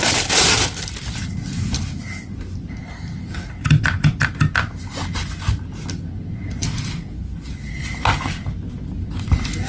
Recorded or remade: recorded